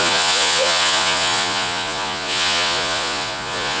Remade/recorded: remade